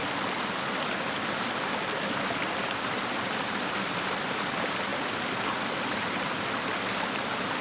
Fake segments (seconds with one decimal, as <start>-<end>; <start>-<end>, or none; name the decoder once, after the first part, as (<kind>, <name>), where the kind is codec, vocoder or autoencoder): none